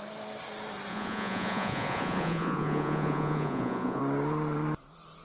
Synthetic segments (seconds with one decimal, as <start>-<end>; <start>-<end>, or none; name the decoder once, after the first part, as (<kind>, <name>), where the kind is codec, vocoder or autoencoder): 0.9-4.0 (vocoder, Vocos)